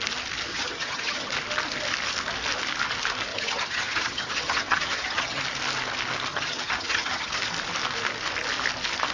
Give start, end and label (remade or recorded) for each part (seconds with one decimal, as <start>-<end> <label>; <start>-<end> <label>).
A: 0.0-0.5 recorded; 0.5-1.3 remade; 1.3-3.3 recorded; 3.3-5.4 remade; 5.4-6.3 recorded; 6.3-7.4 remade; 7.4-9.1 recorded

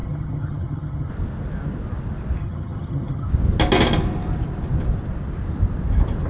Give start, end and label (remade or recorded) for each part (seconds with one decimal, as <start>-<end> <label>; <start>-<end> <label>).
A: 0.0-1.1 remade; 1.1-2.4 recorded; 2.4-3.3 remade; 3.3-6.3 recorded

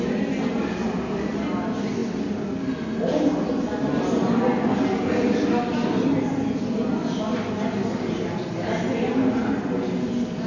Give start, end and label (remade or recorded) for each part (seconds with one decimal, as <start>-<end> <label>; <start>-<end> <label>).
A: 0.0-10.5 recorded

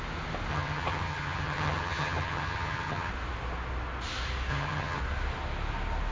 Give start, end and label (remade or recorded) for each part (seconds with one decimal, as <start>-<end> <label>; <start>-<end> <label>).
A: 0.0-0.5 recorded; 0.5-3.1 remade; 3.1-4.5 recorded; 4.5-5.0 remade; 5.0-6.1 recorded

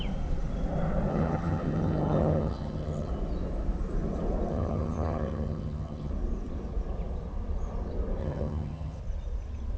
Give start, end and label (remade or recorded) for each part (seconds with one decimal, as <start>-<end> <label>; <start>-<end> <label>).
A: 0.0-1.1 recorded; 1.1-3.1 remade; 3.1-4.5 recorded; 4.5-6.1 remade; 6.1-8.2 recorded; 8.2-9.0 remade; 9.0-9.8 recorded

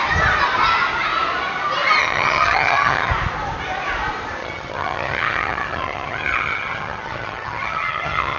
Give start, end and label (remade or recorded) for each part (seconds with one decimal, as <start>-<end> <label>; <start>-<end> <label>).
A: 0.0-2.0 recorded; 2.0-3.1 remade; 3.1-4.4 recorded; 4.4-8.4 remade

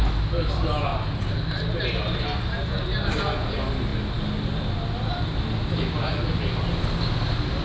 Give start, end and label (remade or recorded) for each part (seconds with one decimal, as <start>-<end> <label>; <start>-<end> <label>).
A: 0.0-7.6 recorded

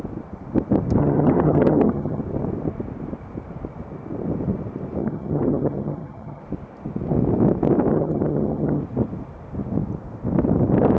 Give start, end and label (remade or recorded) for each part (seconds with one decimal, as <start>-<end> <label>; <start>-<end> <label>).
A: 0.0-1.0 recorded; 1.0-2.2 remade; 2.2-5.0 recorded; 5.0-6.4 remade; 6.4-7.9 recorded; 7.9-8.8 remade; 8.8-11.0 recorded